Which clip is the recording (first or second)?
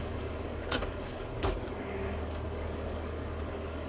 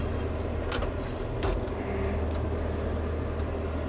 second